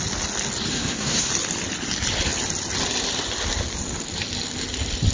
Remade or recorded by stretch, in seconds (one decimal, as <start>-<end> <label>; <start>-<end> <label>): 0.0-0.7 recorded; 0.7-1.3 remade; 1.3-5.1 recorded